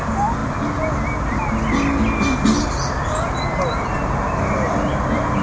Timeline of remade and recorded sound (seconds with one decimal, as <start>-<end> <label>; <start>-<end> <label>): 0.0-5.4 recorded